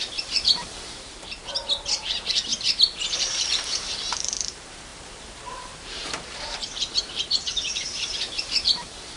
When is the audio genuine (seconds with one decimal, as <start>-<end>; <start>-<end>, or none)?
1.4-2.0; 2.5-3.1